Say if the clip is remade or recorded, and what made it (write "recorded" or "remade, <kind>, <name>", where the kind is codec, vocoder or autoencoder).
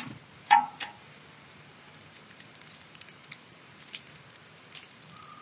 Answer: remade, vocoder, BigVGAN v2